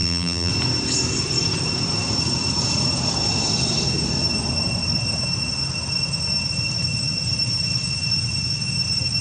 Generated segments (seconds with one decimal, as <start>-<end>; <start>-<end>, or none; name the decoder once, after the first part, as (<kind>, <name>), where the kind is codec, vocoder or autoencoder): 0.0-0.5 (vocoder, BigVGAN v2)